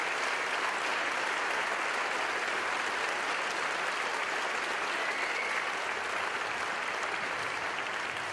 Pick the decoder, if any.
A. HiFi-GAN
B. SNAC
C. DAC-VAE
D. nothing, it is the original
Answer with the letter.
D